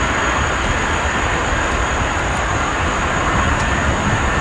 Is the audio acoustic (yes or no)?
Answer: yes